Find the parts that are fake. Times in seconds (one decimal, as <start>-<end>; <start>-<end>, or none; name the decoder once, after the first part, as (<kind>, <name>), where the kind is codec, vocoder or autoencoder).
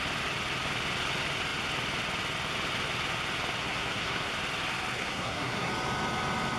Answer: 3.6-4.3 (codec, SNAC); 5.0-5.7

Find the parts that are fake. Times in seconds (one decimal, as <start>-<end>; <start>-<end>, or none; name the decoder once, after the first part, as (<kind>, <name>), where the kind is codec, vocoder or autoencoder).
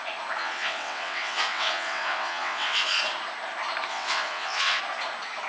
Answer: 0.4-3.0 (vocoder, WaveNeXt); 3.9-4.8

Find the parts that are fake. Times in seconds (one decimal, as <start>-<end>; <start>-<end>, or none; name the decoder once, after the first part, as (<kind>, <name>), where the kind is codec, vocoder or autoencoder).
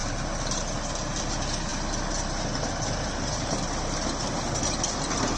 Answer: none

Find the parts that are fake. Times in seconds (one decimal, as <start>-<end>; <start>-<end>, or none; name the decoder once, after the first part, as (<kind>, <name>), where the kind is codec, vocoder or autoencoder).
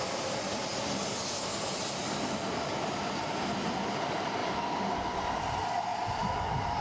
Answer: 0.0-0.7 (vocoder, BigVGAN v2); 2.0-4.4; 5.4-6.8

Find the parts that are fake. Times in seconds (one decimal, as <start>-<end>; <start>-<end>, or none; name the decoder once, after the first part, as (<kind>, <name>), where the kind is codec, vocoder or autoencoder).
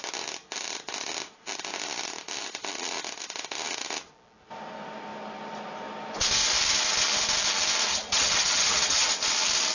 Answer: 7.9-9.1 (vocoder, HiFi-GAN)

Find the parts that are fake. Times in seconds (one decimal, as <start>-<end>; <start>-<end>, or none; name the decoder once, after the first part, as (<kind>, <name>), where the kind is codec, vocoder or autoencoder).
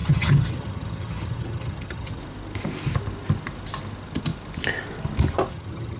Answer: 0.0-2.2 (vocoder, HiFi-GAN); 5.5-6.0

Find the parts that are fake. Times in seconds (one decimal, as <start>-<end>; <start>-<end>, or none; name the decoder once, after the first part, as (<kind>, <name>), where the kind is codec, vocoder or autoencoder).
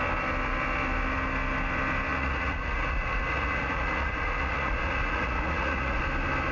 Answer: 2.1-6.0 (vocoder, Vocos)